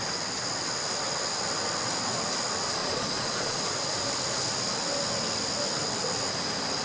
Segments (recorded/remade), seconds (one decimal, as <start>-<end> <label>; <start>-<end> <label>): 0.0-2.8 recorded; 2.8-3.6 remade; 3.6-6.8 recorded